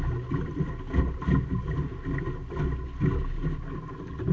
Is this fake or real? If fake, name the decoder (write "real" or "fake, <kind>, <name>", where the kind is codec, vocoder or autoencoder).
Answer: real